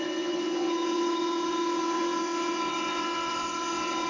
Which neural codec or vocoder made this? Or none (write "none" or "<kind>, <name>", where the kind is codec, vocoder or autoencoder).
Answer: vocoder, WaveNeXt